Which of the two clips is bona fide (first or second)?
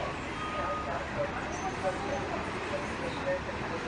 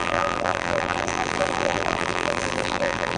first